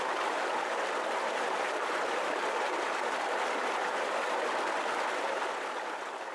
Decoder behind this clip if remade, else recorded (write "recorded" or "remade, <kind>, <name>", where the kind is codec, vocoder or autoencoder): recorded